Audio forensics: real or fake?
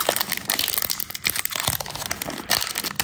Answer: real